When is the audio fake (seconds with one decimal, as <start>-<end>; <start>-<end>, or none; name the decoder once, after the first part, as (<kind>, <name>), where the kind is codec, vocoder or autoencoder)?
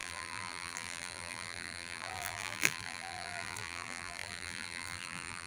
0.0-5.5 (vocoder, BigVGAN v2)